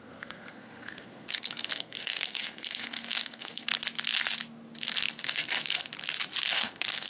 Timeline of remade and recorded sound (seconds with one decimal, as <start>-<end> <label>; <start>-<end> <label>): 0.0-3.7 remade; 3.7-5.2 recorded; 5.2-5.9 remade; 5.9-6.5 recorded; 6.5-7.1 remade

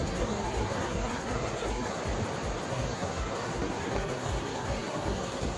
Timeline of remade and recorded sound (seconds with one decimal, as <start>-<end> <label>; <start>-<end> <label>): 0.0-2.0 remade; 2.0-2.7 recorded; 2.7-5.6 remade

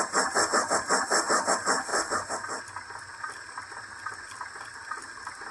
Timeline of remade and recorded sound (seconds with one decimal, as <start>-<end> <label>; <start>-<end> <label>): 0.0-5.5 recorded

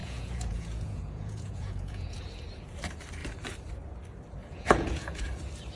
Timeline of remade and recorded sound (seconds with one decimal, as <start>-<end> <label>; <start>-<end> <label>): 0.0-2.2 remade; 2.2-4.4 recorded; 4.4-5.3 remade; 5.3-5.8 recorded

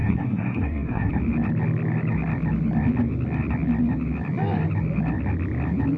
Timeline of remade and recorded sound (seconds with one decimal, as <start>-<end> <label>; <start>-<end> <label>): 0.0-1.1 remade; 1.1-6.0 recorded

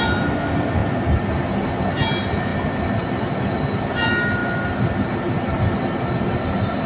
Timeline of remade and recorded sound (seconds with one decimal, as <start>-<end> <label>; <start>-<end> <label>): 0.0-6.9 recorded